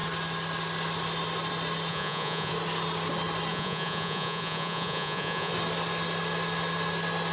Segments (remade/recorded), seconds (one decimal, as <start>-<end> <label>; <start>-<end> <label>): 0.0-1.9 recorded; 1.9-2.5 remade; 2.5-3.5 recorded; 3.5-5.5 remade; 5.5-7.3 recorded